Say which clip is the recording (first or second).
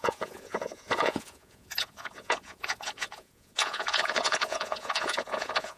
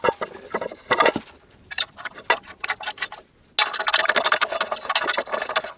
second